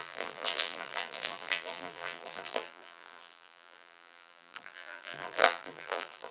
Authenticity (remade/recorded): remade